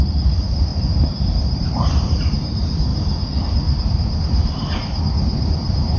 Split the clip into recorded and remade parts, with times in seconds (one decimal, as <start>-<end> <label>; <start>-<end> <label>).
0.0-2.9 remade; 2.9-3.9 recorded; 3.9-6.0 remade